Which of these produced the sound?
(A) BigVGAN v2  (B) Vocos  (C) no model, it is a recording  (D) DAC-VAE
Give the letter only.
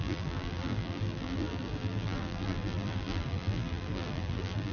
A